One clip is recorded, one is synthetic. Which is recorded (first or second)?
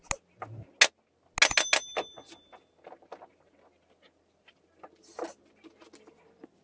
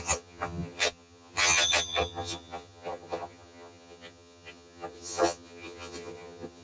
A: first